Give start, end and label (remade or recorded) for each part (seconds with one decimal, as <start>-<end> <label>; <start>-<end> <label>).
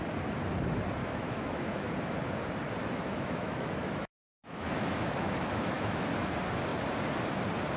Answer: 0.0-1.0 recorded; 1.0-1.9 remade; 1.9-2.8 recorded; 2.8-6.1 remade; 6.1-7.8 recorded